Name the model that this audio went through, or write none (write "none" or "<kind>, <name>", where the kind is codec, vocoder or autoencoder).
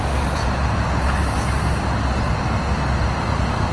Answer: none